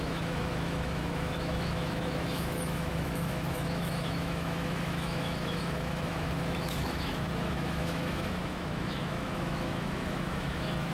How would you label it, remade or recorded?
remade